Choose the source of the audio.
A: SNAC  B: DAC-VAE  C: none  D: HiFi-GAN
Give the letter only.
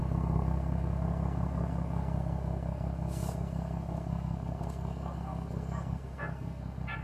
A